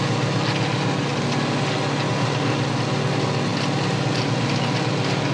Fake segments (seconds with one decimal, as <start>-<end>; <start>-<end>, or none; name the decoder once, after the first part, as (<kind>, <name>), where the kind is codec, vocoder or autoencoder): none